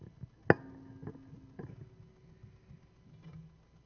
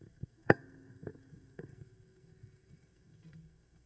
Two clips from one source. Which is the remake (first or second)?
second